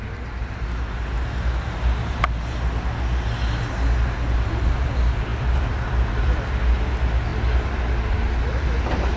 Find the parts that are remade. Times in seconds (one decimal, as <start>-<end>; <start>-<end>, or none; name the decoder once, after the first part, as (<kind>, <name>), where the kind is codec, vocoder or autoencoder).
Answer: 5.3-6.6 (vocoder, BigVGAN v2)